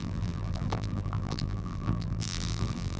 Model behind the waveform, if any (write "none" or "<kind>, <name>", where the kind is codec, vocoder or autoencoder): vocoder, BigVGAN v2